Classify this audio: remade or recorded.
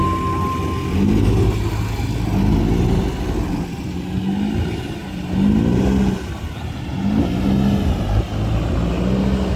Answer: recorded